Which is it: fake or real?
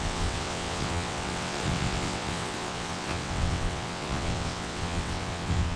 fake